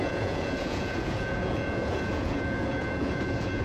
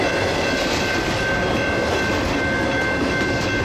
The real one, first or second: second